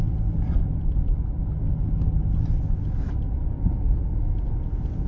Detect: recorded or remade recorded